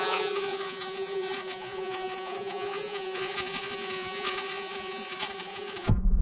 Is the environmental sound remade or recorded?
remade